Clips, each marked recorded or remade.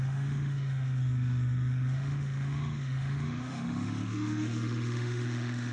remade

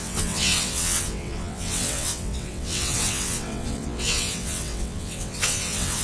remade